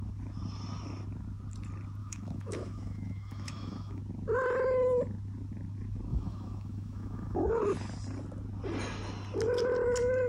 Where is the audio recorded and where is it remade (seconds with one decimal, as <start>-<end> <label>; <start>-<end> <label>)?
0.0-2.0 recorded; 2.0-4.0 remade; 4.0-6.1 recorded; 6.1-7.6 remade; 7.6-10.3 recorded